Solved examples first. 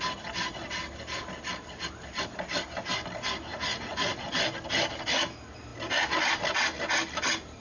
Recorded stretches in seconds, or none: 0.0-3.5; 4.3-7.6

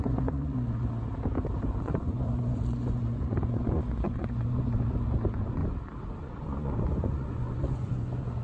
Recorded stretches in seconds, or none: 0.8-1.8; 5.6-6.2